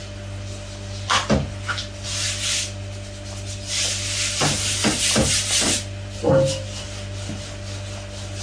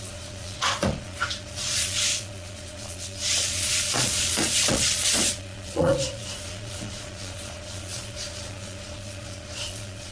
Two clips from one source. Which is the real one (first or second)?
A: first